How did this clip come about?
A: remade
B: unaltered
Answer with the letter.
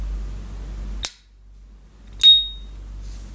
B